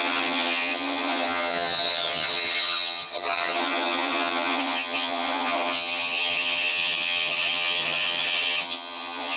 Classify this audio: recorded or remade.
remade